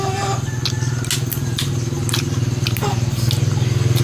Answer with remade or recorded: recorded